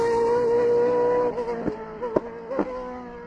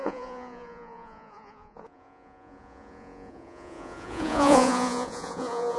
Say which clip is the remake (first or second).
second